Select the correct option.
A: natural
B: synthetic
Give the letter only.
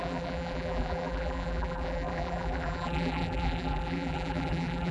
B